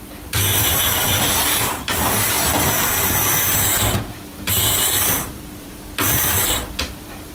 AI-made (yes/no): yes